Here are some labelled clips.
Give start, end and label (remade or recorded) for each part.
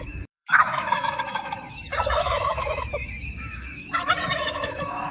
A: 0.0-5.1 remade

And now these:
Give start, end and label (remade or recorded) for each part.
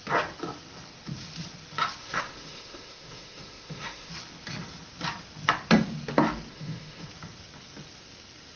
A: 0.0-2.0 recorded; 2.0-4.1 remade; 4.1-6.5 recorded; 6.5-7.1 remade; 7.1-8.6 recorded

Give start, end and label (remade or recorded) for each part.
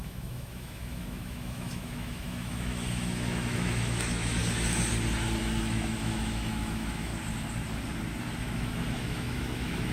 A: 0.0-4.4 remade; 4.4-5.4 recorded; 5.4-7.1 remade; 7.1-8.4 recorded; 8.4-9.9 remade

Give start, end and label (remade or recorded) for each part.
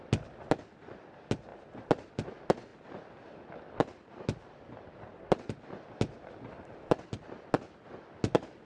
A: 0.0-8.7 recorded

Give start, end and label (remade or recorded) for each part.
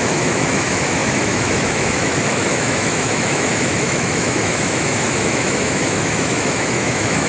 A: 0.0-7.3 remade